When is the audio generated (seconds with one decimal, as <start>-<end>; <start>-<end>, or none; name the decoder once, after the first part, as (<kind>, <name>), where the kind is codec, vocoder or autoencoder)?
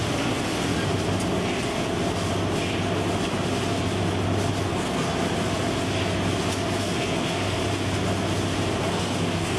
4.6-5.1 (codec, SNAC); 6.8-7.6; 8.8-9.6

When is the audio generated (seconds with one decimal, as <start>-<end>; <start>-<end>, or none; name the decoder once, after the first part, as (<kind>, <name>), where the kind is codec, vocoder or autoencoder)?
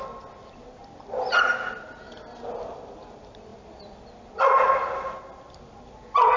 none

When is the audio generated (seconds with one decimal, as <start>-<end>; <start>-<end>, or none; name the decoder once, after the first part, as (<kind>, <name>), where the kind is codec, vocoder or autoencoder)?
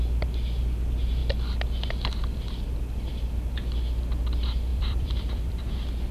4.7-5.6 (vocoder, BigVGAN v2)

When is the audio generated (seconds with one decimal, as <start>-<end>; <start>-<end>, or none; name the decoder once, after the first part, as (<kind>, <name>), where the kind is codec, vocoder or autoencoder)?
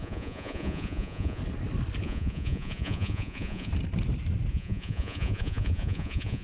0.0-1.4 (vocoder, Vocos); 2.0-3.7; 4.5-6.4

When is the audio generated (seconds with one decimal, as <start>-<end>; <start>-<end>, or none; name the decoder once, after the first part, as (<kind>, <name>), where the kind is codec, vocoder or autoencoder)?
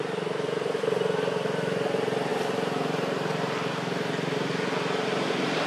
none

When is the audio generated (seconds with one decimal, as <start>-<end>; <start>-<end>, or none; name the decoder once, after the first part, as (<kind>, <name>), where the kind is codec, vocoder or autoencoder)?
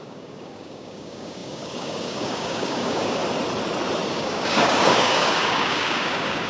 0.0-3.2 (codec, DAC); 4.1-6.5